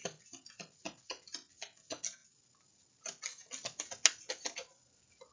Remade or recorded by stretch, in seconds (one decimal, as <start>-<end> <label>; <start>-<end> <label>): 0.0-5.3 recorded

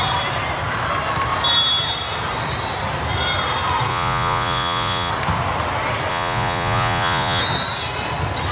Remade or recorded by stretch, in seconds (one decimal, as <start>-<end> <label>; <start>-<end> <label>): 0.0-3.9 recorded; 3.9-5.1 remade; 5.1-6.1 recorded; 6.1-7.4 remade; 7.4-8.5 recorded

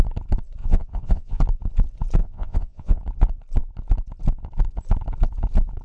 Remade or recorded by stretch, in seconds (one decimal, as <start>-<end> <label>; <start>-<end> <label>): 0.0-0.6 recorded; 0.6-1.4 remade; 1.4-2.2 recorded; 2.2-3.0 remade; 3.0-5.8 recorded

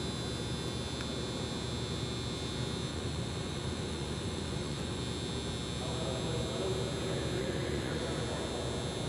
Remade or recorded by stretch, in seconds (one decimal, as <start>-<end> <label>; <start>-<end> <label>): 0.0-2.9 recorded; 2.9-5.0 remade; 5.0-7.4 recorded; 7.4-8.0 remade; 8.0-9.1 recorded

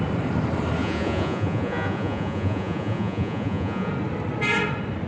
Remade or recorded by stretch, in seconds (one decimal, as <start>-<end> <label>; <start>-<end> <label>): 0.0-0.8 recorded; 0.8-3.9 remade; 3.9-5.1 recorded

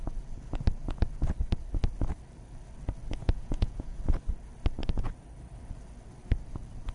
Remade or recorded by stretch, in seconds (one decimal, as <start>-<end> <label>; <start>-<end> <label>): 0.0-3.2 recorded; 3.2-4.0 remade; 4.0-6.9 recorded

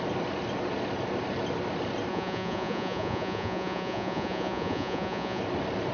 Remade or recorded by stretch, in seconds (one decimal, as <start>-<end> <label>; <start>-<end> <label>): 0.0-2.1 recorded; 2.1-5.4 remade; 5.4-5.9 recorded

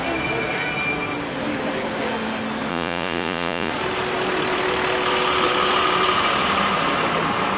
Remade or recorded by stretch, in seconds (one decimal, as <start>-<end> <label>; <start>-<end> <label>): 0.0-2.7 recorded; 2.7-3.7 remade; 3.7-7.6 recorded